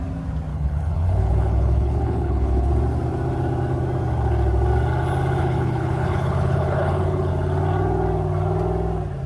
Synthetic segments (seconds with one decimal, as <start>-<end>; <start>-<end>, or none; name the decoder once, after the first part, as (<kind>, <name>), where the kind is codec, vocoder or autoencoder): 0.5-2.7 (codec, HILCodec); 5.4-7.3